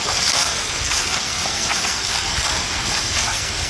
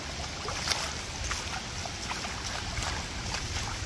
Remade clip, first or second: first